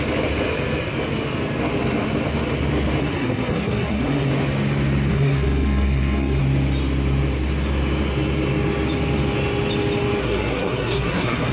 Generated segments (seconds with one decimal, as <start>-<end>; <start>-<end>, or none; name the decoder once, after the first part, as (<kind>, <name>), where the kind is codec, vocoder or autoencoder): 3.0-4.3 (codec, SNAC); 5.1-6.4; 10.2-11.5

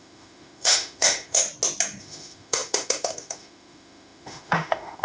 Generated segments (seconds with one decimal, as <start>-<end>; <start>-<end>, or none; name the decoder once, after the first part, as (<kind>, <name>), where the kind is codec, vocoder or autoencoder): 0.0-1.4 (autoencoder, DAC-VAE); 2.0-5.0

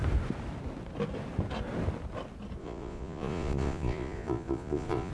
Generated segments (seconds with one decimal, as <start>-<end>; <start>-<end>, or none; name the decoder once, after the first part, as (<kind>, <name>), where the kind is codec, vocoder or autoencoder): 2.6-5.1 (vocoder, Vocos)

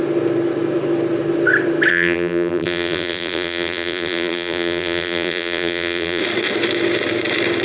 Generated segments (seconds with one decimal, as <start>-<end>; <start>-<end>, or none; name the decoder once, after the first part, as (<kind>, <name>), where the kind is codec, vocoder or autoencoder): 1.9-6.2 (vocoder, BigVGAN v2)

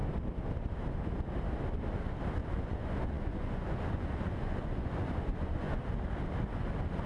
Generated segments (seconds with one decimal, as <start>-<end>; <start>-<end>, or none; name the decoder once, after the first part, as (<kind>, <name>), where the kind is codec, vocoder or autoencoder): 2.4-5.8 (vocoder, Vocos)

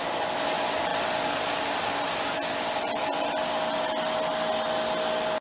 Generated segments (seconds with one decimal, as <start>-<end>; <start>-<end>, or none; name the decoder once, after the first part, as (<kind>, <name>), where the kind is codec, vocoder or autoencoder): none

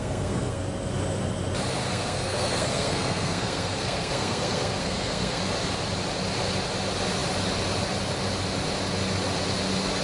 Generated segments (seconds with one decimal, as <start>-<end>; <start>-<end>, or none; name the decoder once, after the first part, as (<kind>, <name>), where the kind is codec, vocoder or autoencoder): 0.0-0.6 (codec, SNAC); 1.8-5.4